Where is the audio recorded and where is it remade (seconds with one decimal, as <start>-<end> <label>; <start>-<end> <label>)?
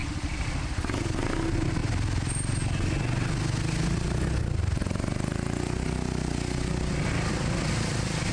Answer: 0.0-0.7 remade; 0.7-8.3 recorded